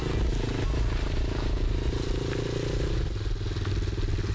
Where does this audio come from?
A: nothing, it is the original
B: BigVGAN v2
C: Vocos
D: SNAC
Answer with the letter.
A